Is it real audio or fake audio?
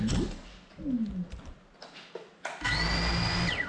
real